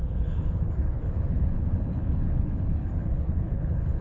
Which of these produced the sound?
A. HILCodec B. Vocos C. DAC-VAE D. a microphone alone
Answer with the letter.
A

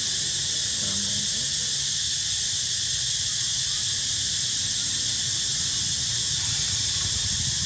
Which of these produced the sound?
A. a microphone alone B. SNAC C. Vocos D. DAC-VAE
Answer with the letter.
A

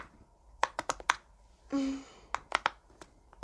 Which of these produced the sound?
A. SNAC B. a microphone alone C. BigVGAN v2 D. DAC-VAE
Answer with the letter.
B